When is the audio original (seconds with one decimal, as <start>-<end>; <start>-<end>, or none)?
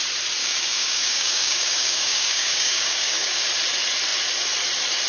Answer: 0.0-0.4; 3.5-5.1